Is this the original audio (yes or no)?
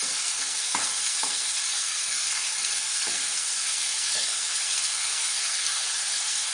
no